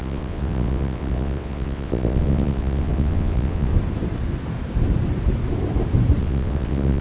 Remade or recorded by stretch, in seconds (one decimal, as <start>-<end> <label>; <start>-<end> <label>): 0.0-3.7 remade; 3.7-6.2 recorded; 6.2-7.0 remade